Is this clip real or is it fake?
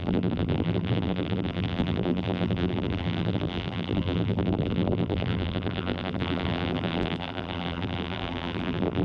fake